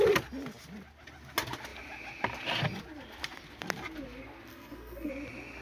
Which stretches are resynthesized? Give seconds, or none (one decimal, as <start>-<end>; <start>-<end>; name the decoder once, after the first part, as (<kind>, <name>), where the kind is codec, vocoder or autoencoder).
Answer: 4.5-5.1 (codec, SNAC)